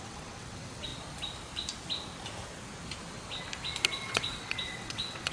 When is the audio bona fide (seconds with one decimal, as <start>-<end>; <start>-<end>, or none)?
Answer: 0.9-3.9